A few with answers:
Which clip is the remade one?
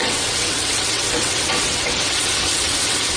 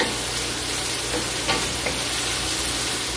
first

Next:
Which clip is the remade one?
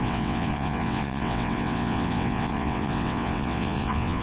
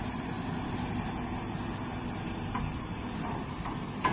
first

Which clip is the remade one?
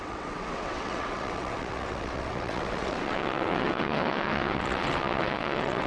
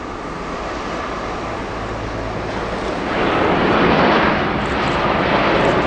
first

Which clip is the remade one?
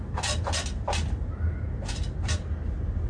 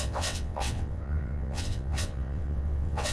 second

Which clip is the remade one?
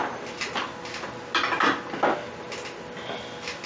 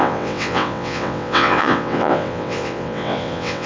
second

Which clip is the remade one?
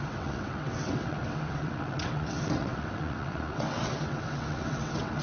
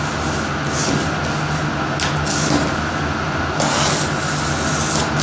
first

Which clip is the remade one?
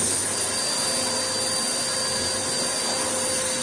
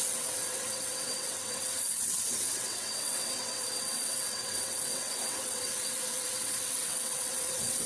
second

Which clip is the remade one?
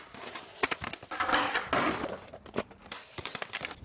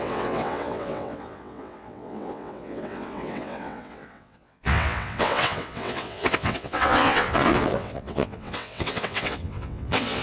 second